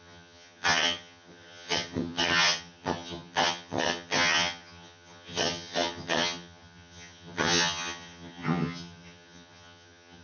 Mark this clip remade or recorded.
remade